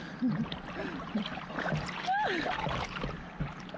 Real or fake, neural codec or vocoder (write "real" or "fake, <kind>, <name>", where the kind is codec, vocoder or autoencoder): real